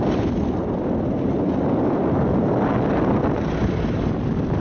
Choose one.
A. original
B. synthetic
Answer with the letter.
A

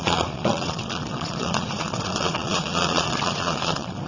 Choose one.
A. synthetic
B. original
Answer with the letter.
A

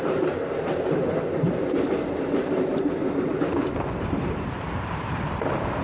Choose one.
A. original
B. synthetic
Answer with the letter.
B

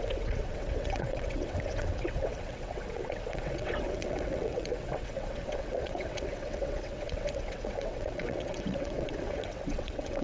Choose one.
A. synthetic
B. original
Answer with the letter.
A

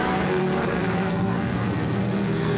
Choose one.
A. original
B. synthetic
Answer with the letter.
B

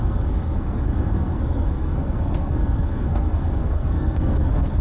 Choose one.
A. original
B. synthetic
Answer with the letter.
B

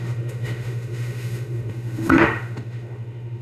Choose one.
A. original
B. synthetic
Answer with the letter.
B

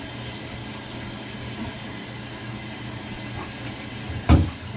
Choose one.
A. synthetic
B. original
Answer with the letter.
B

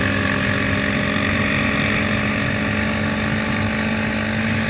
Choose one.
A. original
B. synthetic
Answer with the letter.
A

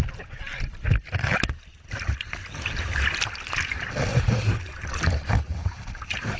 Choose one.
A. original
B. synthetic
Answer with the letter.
A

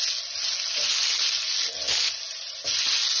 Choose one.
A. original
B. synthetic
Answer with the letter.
A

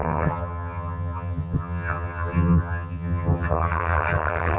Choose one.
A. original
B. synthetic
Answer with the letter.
B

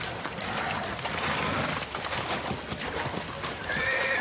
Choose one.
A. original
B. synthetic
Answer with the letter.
A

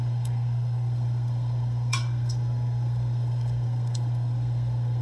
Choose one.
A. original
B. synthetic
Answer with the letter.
B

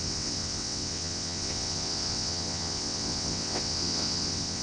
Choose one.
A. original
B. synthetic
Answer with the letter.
B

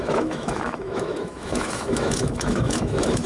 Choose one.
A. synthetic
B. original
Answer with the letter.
A